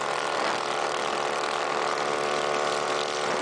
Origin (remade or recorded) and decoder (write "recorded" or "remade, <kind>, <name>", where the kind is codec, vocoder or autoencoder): recorded